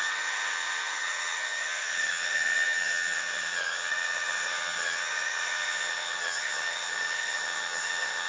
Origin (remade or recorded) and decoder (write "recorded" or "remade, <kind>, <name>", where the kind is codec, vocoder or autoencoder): remade, vocoder, HiFi-GAN